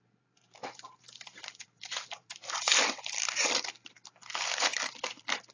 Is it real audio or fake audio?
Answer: fake